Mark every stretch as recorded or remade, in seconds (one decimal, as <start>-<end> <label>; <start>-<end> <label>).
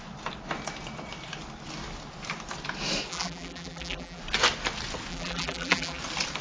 0.0-3.1 recorded; 3.1-4.2 remade; 4.2-5.1 recorded; 5.1-6.0 remade; 6.0-6.4 recorded